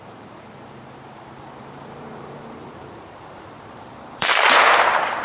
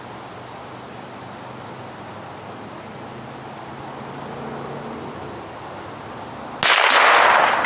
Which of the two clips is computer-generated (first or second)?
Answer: first